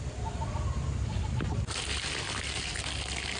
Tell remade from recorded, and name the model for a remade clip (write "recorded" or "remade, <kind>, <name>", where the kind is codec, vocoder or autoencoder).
recorded